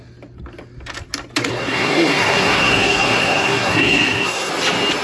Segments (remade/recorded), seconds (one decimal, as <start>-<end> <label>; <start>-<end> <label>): 0.0-1.5 recorded; 1.5-4.5 remade; 4.5-5.0 recorded